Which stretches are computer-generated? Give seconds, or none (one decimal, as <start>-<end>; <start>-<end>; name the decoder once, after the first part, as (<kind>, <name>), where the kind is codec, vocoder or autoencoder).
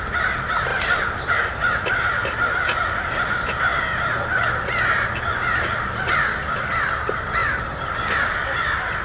none